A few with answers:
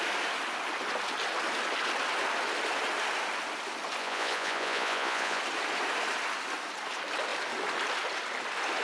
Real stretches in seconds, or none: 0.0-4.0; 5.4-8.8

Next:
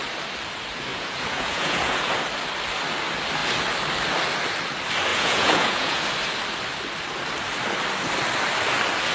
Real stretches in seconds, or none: 0.0-0.9; 2.0-5.1; 6.0-9.1

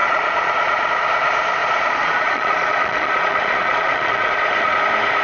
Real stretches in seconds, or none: 0.9-1.6; 4.7-5.2